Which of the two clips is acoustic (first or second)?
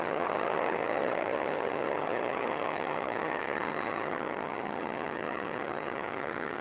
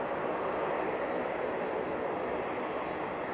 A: second